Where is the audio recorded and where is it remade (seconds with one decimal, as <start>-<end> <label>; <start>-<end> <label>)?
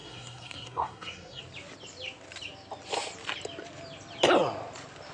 0.0-1.4 remade; 1.4-5.1 recorded